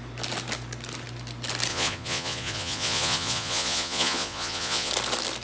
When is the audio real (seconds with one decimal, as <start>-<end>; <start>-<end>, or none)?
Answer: 0.0-1.7; 4.9-5.4